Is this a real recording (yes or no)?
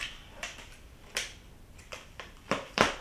no